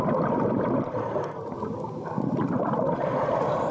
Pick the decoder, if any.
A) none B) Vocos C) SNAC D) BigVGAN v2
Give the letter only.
A